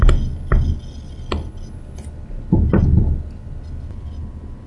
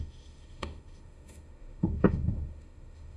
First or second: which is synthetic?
second